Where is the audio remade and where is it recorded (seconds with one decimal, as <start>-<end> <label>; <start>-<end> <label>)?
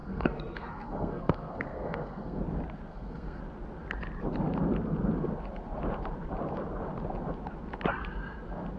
0.0-2.4 remade; 2.4-2.9 recorded; 2.9-3.4 remade; 3.4-8.8 recorded